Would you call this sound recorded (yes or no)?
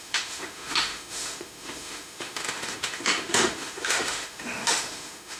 no